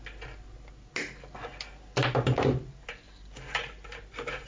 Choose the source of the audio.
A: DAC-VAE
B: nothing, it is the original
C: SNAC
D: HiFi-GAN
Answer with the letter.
B